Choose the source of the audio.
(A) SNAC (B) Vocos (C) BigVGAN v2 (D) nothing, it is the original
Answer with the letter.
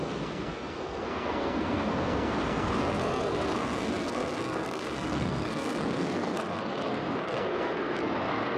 A